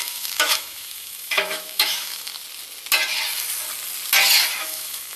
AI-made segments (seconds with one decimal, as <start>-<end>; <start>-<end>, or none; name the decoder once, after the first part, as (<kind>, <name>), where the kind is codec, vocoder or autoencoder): 0.0-2.3 (autoencoder, DAC-VAE); 4.6-5.2